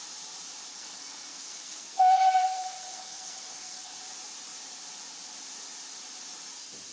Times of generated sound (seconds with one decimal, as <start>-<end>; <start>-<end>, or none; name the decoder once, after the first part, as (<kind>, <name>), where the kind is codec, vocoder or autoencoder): 0.7-4.0 (codec, SNAC)